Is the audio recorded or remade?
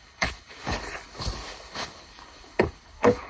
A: remade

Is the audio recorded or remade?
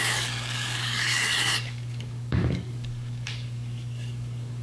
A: remade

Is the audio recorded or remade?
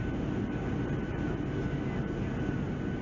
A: recorded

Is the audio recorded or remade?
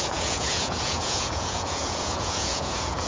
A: remade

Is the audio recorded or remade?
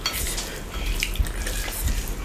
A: recorded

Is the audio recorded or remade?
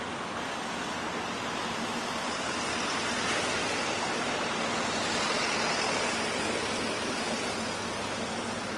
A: recorded